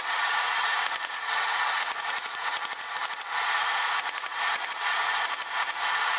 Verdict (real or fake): fake